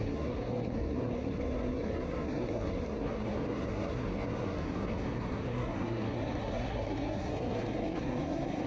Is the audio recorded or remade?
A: remade